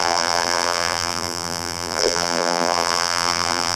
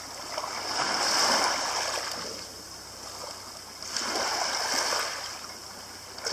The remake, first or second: first